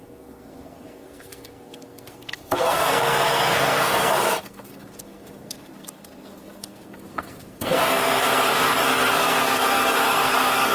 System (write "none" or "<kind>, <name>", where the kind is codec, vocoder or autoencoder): codec, SNAC